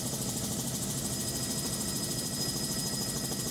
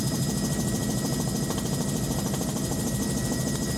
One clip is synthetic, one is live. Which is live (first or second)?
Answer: second